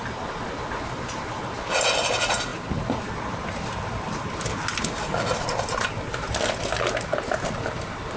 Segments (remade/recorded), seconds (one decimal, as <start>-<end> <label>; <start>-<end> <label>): 0.0-8.2 recorded